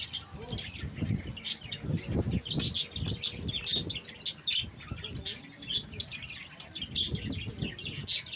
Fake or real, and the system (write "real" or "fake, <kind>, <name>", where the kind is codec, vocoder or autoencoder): real